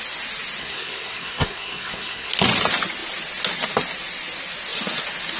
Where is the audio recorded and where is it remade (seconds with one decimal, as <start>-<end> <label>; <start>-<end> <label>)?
0.0-0.6 recorded; 0.6-2.3 remade; 2.3-5.4 recorded